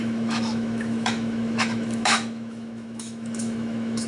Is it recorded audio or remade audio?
remade